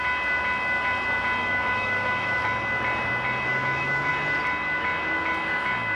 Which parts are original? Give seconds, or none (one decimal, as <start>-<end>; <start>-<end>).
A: 0.0-1.4; 2.4-3.5; 4.1-6.0